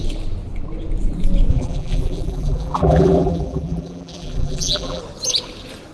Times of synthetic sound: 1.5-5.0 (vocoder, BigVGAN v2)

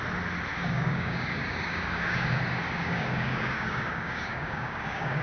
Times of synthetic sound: 0.5-2.4 (codec, DAC); 2.8-5.2

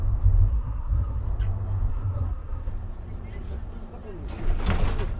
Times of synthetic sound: 0.5-1.2 (codec, SNAC); 1.9-2.7

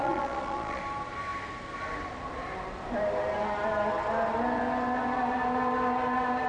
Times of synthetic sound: 0.0-0.8 (vocoder, Vocos)

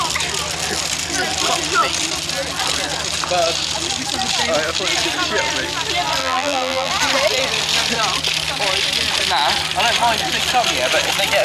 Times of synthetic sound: 6.2-6.9 (vocoder, BigVGAN v2)

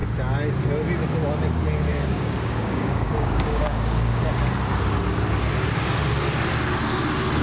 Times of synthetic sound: 1.9-4.3 (codec, DAC)

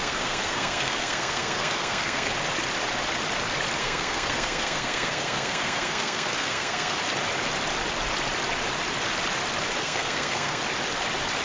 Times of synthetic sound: 0.0-2.3 (codec, SNAC); 3.8-7.0; 9.8-10.6

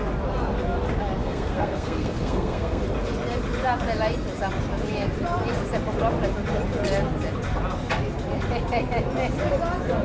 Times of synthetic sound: 1.2-2.8 (codec, SNAC)